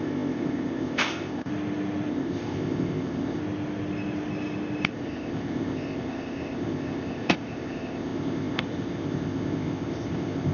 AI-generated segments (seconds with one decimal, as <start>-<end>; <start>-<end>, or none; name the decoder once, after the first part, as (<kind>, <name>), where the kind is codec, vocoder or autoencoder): 0.0-1.5 (codec, ZipCodec); 2.1-3.4; 4.9-10.5